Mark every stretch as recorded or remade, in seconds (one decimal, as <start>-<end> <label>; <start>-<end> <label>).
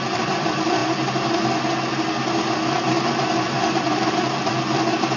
0.0-0.8 remade; 0.8-3.8 recorded; 3.8-5.2 remade